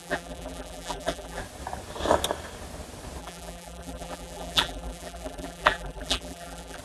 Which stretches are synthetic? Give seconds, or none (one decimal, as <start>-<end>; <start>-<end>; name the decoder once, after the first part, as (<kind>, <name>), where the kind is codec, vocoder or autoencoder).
0.0-1.4 (vocoder, BigVGAN v2); 3.2-6.8